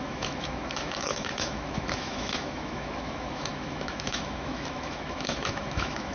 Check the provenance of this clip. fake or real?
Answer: fake